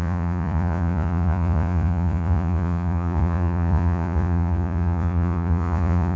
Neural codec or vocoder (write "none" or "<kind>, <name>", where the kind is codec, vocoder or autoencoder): vocoder, Vocos